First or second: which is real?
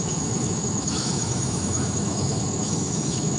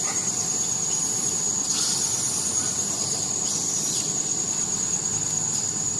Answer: second